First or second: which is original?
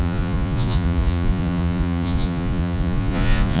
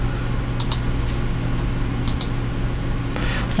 second